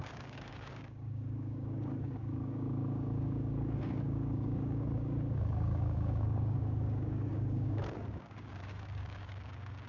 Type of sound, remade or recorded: remade